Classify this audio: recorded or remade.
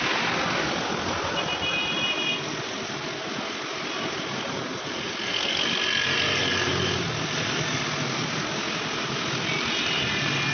recorded